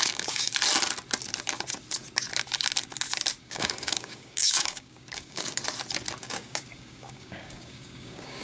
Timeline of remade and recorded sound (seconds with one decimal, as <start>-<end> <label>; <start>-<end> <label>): 0.0-0.5 remade; 0.5-3.4 recorded; 3.4-5.6 remade; 5.6-6.2 recorded; 6.2-8.4 remade